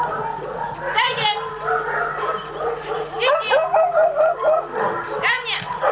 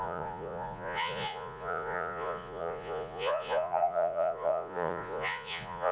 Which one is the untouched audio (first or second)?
first